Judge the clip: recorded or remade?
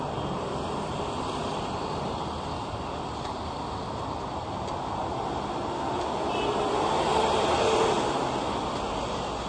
recorded